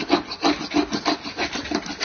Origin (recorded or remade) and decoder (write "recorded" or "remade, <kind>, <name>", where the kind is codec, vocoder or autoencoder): recorded